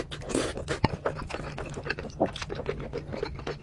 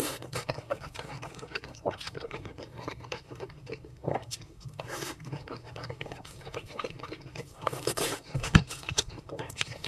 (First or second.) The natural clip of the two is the first